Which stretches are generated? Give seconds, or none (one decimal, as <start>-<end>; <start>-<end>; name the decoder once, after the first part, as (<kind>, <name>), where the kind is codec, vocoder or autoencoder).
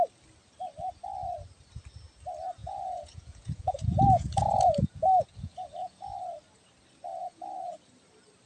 2.6-6.2 (vocoder, Vocos); 7.1-7.7